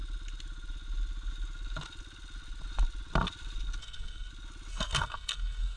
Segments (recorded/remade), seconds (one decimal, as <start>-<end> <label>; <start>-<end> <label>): 0.0-3.8 recorded; 3.8-4.3 remade; 4.3-4.7 recorded; 4.7-5.8 remade